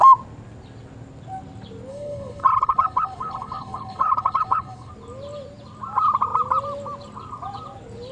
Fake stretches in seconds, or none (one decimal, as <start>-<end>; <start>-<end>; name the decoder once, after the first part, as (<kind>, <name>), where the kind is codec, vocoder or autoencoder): 1.9-4.9 (codec, HILCodec)